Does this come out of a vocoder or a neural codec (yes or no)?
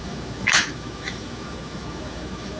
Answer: yes